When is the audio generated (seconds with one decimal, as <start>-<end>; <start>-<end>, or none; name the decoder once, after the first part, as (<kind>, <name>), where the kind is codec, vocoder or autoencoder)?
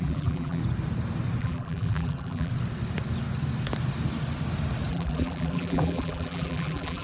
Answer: 0.0-0.6 (vocoder, BigVGAN v2); 1.4-2.5; 4.9-7.0